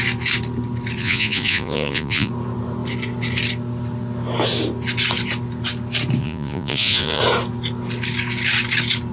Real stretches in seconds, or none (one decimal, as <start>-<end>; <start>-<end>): 0.0-1.0; 2.3-6.2; 7.2-9.1